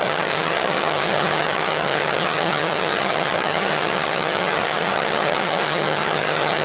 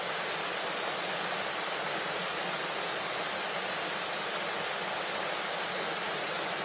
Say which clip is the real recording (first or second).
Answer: second